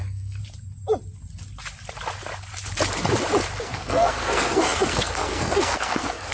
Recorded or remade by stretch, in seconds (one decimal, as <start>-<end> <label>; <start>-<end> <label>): 0.0-0.4 remade; 0.4-3.6 recorded; 3.6-6.3 remade